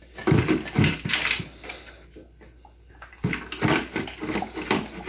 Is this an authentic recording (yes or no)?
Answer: yes